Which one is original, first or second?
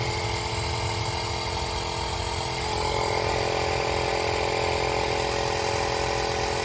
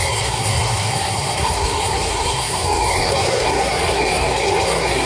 first